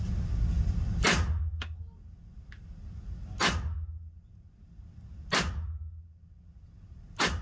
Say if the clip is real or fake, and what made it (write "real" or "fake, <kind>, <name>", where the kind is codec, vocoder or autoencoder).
real